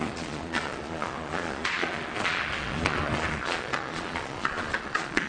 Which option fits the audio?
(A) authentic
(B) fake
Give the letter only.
B